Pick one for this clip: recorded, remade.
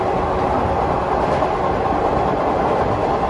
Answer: recorded